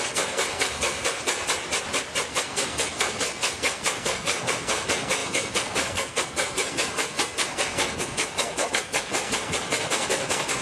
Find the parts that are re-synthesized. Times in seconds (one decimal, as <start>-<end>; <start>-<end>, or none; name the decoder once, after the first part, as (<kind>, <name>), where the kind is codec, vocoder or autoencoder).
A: 0.0-1.6 (codec, SNAC); 2.3-10.6